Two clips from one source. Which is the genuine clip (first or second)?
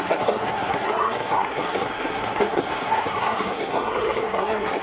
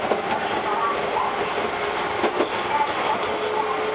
second